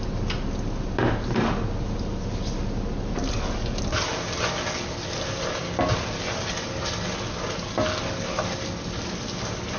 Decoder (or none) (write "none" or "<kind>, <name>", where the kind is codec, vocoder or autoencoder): none